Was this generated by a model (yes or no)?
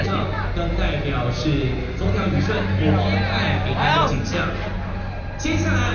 no